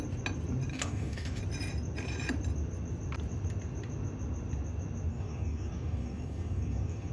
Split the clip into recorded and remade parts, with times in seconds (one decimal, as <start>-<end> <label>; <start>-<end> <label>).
0.0-0.7 recorded; 0.7-1.4 remade; 1.4-5.1 recorded; 5.1-7.1 remade